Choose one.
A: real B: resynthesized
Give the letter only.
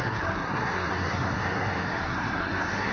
B